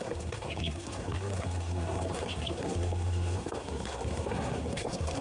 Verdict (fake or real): fake